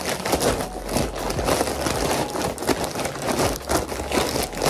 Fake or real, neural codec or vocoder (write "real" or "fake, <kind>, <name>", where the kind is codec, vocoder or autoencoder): real